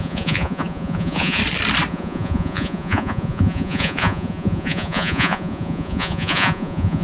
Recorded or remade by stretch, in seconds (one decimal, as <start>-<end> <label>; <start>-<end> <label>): 0.0-1.4 remade; 1.4-1.9 recorded; 1.9-7.0 remade